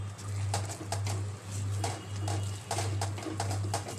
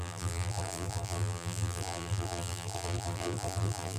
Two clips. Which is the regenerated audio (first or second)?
second